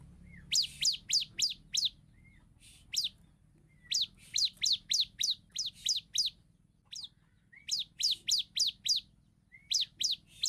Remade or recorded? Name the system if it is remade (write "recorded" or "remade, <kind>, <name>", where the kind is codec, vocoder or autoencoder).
recorded